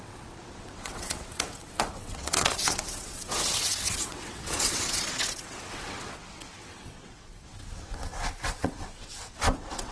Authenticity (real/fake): fake